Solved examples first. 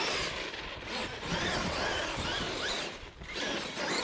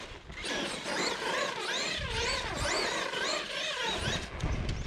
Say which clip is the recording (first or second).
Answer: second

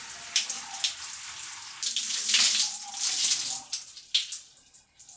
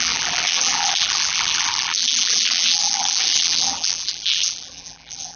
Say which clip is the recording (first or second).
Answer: first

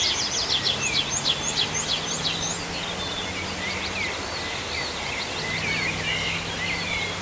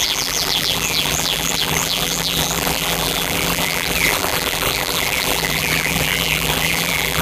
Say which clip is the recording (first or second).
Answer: first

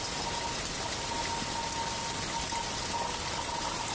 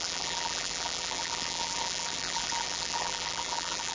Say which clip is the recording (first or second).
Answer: first